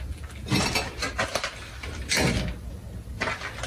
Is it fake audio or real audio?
real